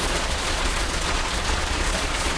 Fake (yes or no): yes